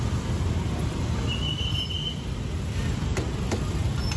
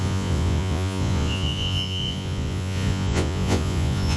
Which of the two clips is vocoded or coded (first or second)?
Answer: second